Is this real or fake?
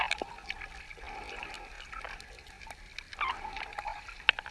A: real